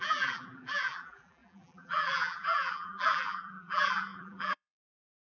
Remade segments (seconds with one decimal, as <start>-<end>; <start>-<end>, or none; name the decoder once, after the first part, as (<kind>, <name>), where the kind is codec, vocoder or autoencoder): 0.0-5.4 (vocoder, BigVGAN v2)